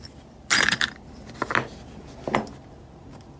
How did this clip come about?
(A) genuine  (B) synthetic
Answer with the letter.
A